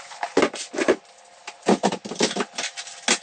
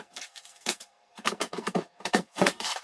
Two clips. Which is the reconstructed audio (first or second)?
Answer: second